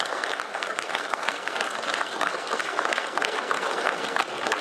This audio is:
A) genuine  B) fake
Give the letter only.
B